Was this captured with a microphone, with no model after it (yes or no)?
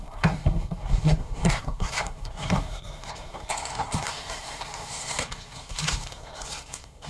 no